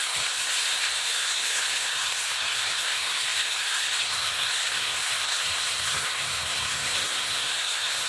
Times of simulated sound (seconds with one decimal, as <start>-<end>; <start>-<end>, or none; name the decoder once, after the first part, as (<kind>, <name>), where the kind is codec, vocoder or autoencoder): 0.0-8.1 (codec, SNAC)